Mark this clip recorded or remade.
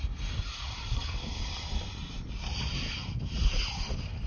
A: recorded